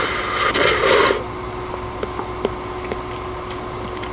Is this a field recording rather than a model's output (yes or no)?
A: yes